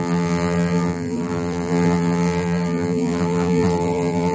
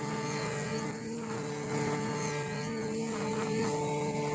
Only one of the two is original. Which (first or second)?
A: second